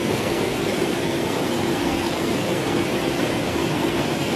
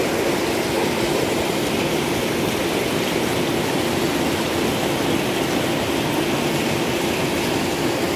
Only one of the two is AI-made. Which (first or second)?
first